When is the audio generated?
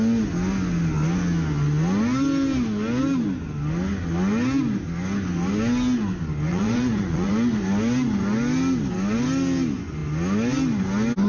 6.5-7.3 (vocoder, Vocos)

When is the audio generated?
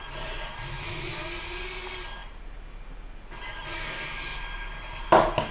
none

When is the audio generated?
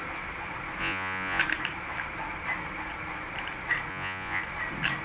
0.8-1.4 (vocoder, Vocos); 3.9-4.4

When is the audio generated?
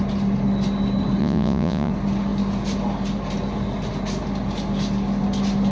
1.2-1.9 (vocoder, Vocos)